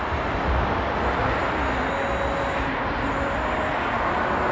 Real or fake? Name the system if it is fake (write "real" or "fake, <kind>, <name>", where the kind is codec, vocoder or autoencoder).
real